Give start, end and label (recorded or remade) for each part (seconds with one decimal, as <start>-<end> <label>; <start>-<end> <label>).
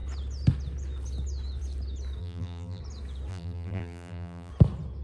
0.0-2.2 recorded; 2.2-2.8 remade; 2.8-3.3 recorded; 3.3-4.5 remade; 4.5-5.0 recorded